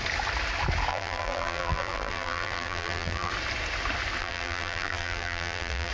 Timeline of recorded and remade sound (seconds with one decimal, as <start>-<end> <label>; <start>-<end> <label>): 0.0-0.9 recorded; 0.9-3.3 remade; 3.3-4.2 recorded; 4.2-5.9 remade